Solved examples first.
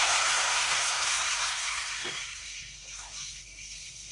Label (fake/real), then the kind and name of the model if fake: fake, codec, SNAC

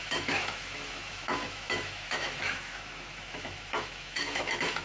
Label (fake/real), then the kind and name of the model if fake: fake, autoencoder, DAC-VAE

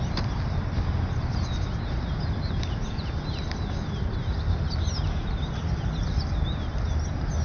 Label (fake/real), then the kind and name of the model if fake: real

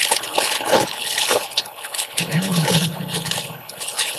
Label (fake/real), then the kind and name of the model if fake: fake, codec, HILCodec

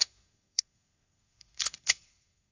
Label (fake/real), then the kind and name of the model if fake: fake, codec, SNAC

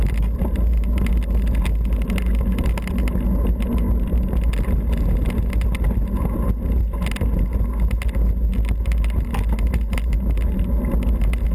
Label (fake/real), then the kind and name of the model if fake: real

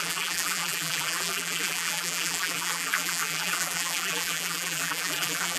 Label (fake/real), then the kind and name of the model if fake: fake, vocoder, BigVGAN v2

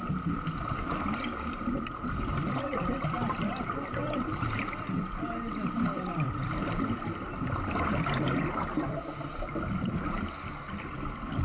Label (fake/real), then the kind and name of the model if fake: fake, vocoder, BigVGAN v2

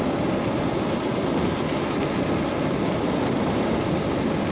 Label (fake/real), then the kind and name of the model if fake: real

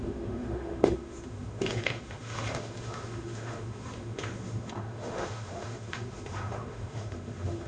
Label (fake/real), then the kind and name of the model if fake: fake, autoencoder, DAC-VAE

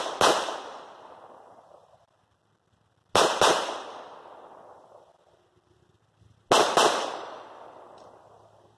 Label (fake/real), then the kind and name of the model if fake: real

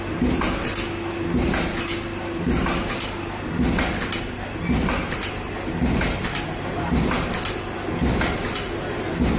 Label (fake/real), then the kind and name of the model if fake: real